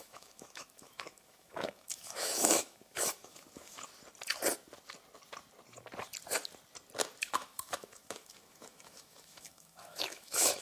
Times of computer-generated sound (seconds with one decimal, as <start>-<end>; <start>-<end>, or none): 0.0-3.9; 7.2-10.6